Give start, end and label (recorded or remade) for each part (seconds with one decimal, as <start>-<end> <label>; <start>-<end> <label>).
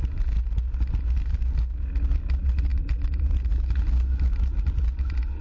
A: 0.0-5.4 recorded